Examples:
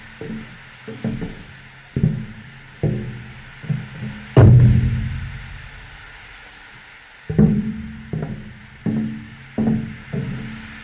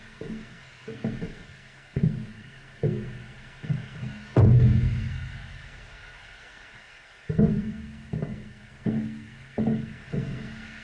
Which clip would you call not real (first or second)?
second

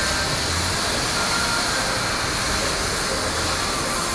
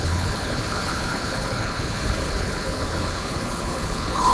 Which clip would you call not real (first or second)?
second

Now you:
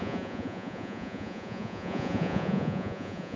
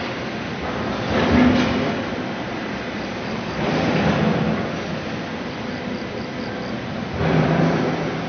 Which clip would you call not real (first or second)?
first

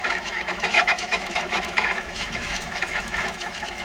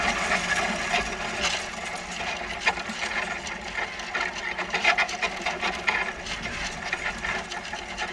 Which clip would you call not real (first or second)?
first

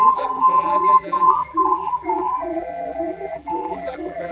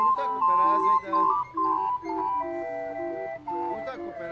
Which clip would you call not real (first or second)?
first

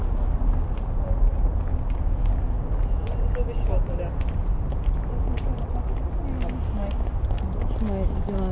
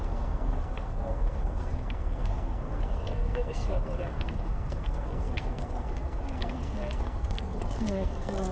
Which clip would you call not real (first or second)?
second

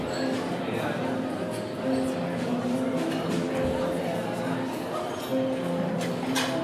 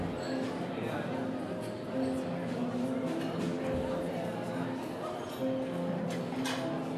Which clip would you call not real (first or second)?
first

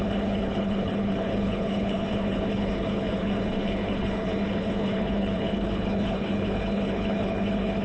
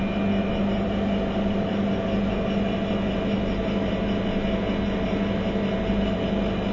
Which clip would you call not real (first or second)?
first